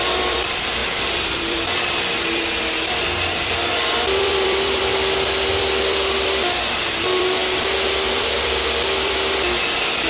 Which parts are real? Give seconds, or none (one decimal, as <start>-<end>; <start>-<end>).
4.9-5.5; 7.4-8.1